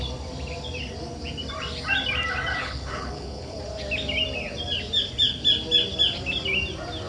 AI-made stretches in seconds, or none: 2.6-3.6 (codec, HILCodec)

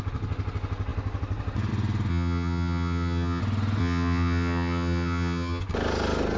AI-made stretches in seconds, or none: 2.1-3.4 (vocoder, HiFi-GAN); 3.8-5.6

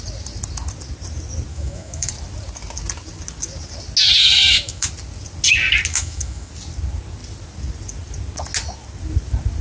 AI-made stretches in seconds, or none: 1.5-2.1 (autoencoder, DAC-VAE); 4.2-4.9; 5.9-6.5

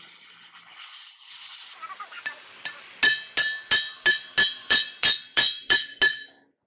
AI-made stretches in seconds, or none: 4.6-6.0 (vocoder, Vocos)

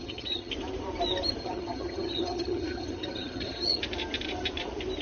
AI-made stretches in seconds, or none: 0.0-0.5 (vocoder, HiFi-GAN); 1.4-3.8

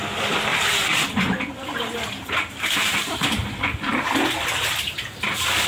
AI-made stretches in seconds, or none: 0.5-3.9 (vocoder, BigVGAN v2)